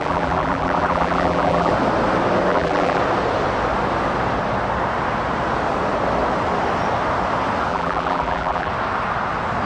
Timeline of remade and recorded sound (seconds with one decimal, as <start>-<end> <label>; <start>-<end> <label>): 0.0-1.7 remade; 1.7-2.5 recorded; 2.5-3.0 remade; 3.0-7.7 recorded; 7.7-8.7 remade; 8.7-9.7 recorded

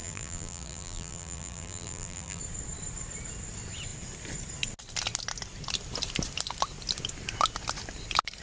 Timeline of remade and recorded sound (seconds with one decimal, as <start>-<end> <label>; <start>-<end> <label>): 0.0-2.4 remade; 2.4-8.4 recorded

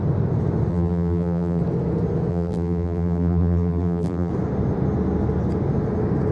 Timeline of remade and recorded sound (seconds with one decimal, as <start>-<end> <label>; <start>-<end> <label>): 0.0-0.7 recorded; 0.7-1.6 remade; 1.6-2.3 recorded; 2.3-4.3 remade; 4.3-6.3 recorded

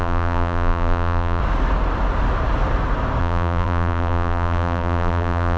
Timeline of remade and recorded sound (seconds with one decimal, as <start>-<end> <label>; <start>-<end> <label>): 0.0-1.4 remade; 1.4-3.2 recorded; 3.2-5.6 remade

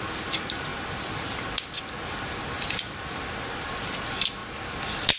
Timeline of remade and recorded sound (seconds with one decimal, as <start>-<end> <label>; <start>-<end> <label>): 0.0-5.2 recorded

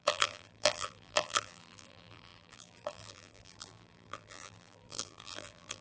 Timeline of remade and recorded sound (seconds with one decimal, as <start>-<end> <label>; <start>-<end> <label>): 0.0-5.8 remade

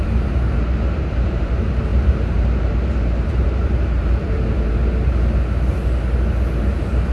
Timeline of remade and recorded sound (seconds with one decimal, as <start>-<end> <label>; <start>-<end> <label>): 0.0-4.8 remade; 4.8-6.6 recorded; 6.6-7.1 remade

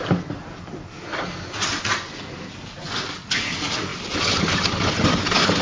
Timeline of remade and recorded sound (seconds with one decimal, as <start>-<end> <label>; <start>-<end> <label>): 0.0-3.9 recorded; 3.9-4.6 remade; 4.6-5.6 recorded